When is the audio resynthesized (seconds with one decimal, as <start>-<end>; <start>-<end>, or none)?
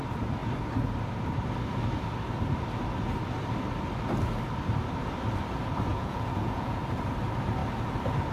5.9-6.8